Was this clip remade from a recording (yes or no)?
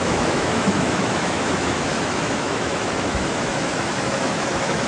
yes